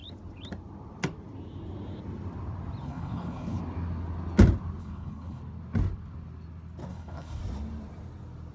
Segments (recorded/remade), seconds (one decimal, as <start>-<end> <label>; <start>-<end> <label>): 0.0-2.8 recorded; 2.8-3.6 remade; 3.6-4.8 recorded; 4.8-5.4 remade; 5.4-6.9 recorded; 6.9-7.4 remade; 7.4-8.5 recorded